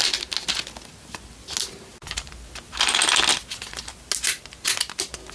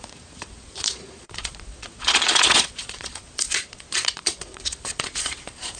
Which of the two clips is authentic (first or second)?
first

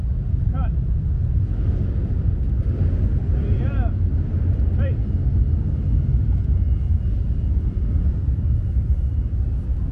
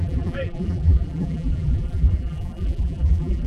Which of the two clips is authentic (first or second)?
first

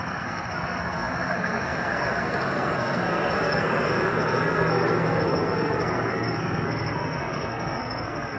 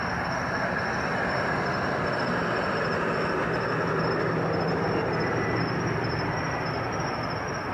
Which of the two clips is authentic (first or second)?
second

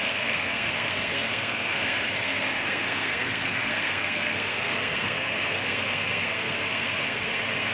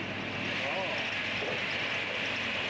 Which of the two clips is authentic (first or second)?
second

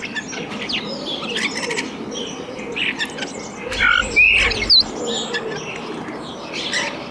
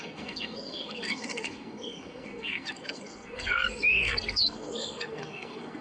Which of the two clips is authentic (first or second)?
first